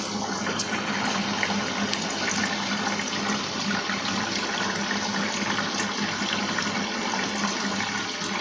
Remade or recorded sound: recorded